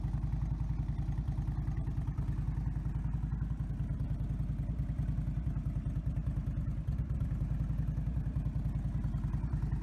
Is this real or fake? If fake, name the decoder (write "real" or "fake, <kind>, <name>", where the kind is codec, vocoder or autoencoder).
real